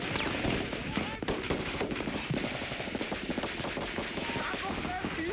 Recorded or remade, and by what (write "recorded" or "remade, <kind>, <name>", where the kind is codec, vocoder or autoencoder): recorded